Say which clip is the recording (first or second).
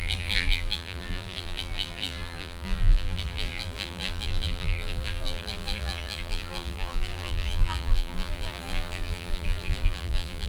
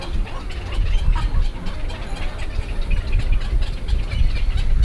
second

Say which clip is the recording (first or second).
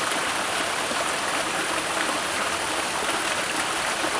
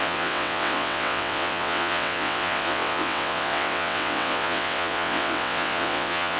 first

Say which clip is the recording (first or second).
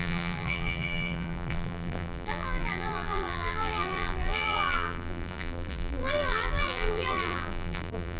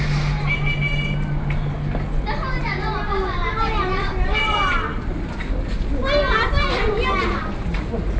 second